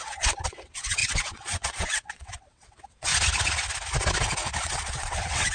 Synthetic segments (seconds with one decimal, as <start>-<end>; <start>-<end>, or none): 0.0-3.1; 4.6-5.5